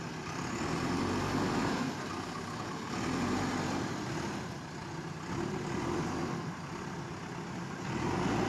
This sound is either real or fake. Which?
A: real